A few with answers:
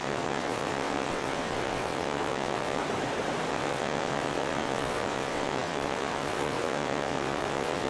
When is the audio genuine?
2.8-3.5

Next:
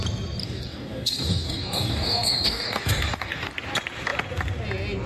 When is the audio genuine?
0.0-0.4; 3.5-5.1

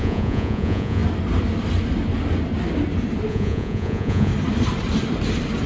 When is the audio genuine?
1.0-3.3; 4.3-5.7

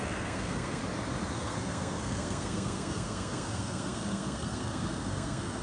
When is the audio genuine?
0.8-1.3